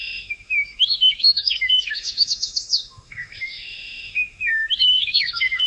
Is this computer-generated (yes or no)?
yes